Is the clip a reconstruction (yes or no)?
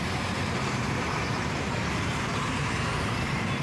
yes